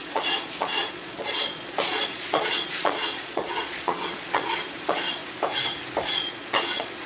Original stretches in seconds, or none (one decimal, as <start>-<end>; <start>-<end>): 5.2-6.1